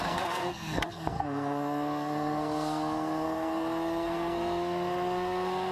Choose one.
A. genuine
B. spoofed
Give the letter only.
B